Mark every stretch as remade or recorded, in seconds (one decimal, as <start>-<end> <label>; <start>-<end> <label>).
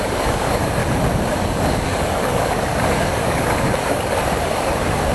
0.0-0.8 remade; 0.8-1.3 recorded; 1.3-5.1 remade